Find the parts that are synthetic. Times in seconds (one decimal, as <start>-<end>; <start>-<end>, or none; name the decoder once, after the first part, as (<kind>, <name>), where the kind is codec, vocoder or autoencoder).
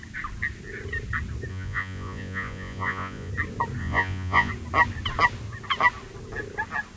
1.5-3.3 (vocoder, Vocos); 3.8-4.5